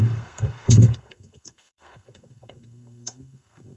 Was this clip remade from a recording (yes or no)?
yes